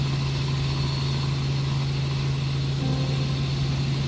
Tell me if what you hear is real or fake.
real